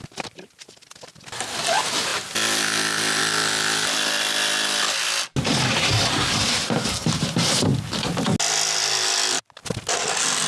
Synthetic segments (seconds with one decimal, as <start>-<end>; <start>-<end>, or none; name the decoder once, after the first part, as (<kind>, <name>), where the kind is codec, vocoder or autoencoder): none